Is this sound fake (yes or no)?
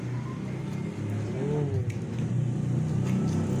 no